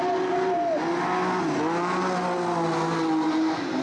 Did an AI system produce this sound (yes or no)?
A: no